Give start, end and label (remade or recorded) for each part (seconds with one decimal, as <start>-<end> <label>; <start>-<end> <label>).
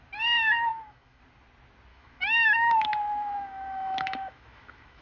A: 0.0-0.7 recorded; 0.7-1.2 remade; 1.2-1.9 recorded; 1.9-5.0 remade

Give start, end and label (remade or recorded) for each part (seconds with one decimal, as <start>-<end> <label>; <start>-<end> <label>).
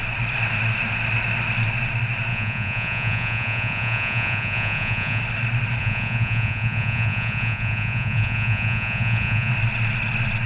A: 0.0-2.3 recorded; 2.3-5.2 remade; 5.2-5.8 recorded; 5.8-9.5 remade; 9.5-10.5 recorded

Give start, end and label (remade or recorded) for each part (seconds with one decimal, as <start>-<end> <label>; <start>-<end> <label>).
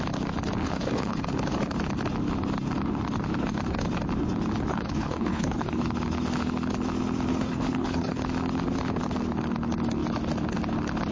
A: 0.0-0.6 recorded; 0.6-1.2 remade; 1.2-4.7 recorded; 4.7-5.8 remade; 5.8-7.3 recorded; 7.3-8.2 remade; 8.2-11.1 recorded